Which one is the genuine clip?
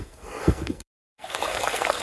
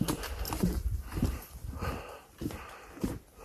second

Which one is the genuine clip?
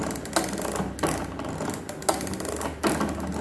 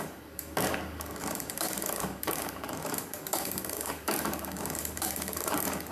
first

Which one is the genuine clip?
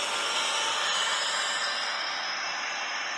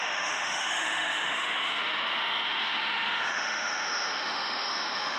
first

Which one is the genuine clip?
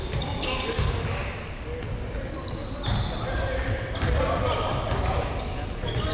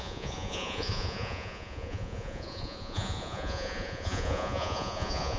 first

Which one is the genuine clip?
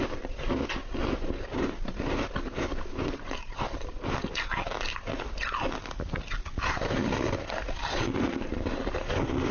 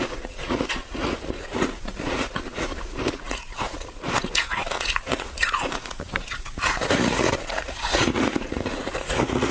first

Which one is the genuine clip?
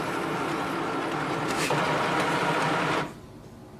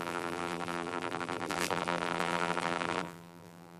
first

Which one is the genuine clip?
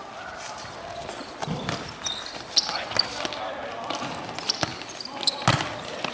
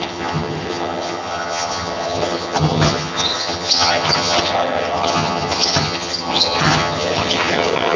first